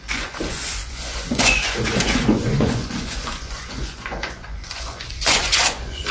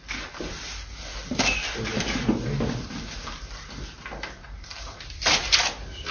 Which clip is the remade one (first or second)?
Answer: first